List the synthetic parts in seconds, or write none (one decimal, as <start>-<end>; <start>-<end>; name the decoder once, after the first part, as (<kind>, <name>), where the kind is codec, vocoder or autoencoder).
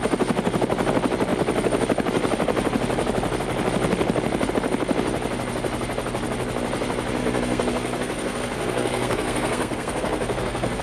7.2-10.8 (codec, SNAC)